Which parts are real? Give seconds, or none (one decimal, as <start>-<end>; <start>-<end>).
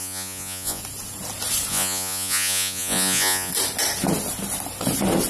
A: 0.8-1.7; 3.5-5.3